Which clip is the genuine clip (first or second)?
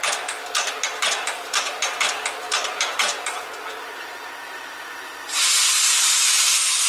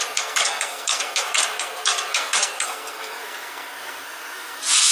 first